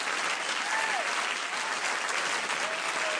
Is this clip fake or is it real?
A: real